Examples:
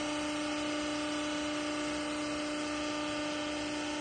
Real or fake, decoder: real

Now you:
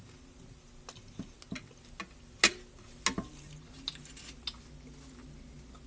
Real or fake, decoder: real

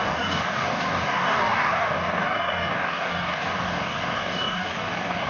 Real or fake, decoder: fake, codec, DAC